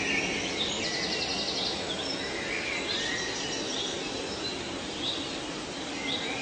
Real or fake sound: real